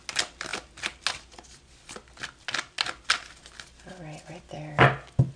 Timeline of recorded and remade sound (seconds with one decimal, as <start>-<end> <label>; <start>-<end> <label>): 0.0-5.4 recorded

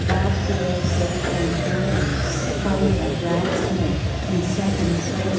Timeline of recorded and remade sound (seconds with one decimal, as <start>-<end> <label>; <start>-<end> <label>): 0.0-2.1 recorded; 2.1-3.0 remade; 3.0-5.4 recorded

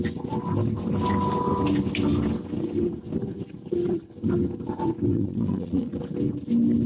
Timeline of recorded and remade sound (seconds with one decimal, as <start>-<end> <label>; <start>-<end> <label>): 0.0-5.1 recorded; 5.1-6.0 remade; 6.0-6.9 recorded

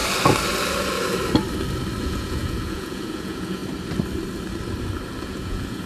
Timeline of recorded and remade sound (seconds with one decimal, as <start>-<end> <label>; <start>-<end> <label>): 0.0-2.0 recorded; 2.0-3.6 remade; 3.6-5.2 recorded; 5.2-5.9 remade

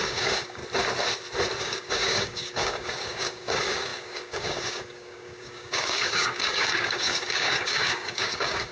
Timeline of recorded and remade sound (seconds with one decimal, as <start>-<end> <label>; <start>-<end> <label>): 0.0-0.6 remade; 0.6-1.6 recorded; 1.6-8.7 remade

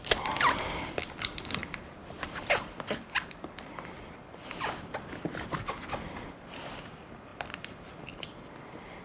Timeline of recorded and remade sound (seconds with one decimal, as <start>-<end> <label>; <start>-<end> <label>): 0.0-9.0 recorded

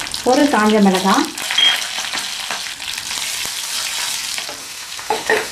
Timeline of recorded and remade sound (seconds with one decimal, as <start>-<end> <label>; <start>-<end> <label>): 0.0-4.6 recorded; 4.6-5.5 remade

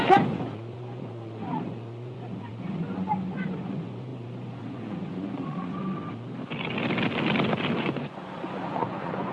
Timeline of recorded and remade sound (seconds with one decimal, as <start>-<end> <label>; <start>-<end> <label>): 0.0-5.8 remade; 5.8-7.8 recorded; 7.8-9.3 remade